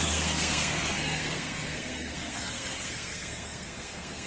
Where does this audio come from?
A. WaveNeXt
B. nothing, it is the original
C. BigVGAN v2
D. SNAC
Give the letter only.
D